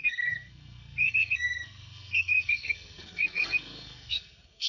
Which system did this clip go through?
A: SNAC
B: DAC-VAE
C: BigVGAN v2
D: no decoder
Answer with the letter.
A